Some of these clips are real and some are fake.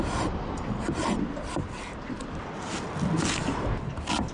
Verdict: real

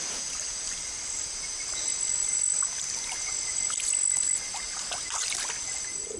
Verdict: real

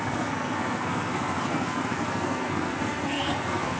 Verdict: fake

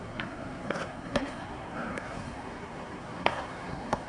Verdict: fake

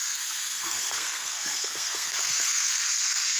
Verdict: fake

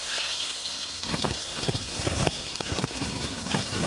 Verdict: fake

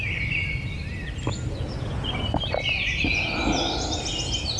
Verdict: real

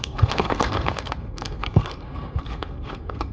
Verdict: fake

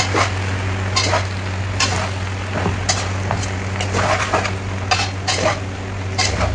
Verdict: real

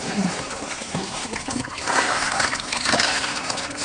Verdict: fake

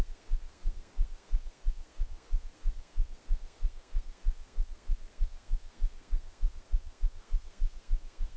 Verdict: fake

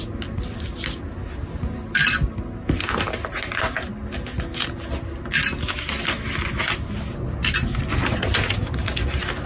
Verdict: real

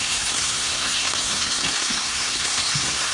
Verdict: fake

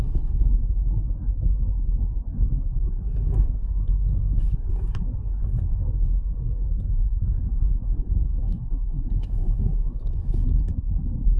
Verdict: fake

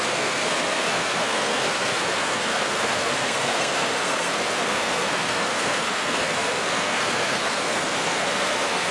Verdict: fake